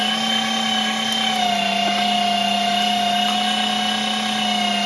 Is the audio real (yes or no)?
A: yes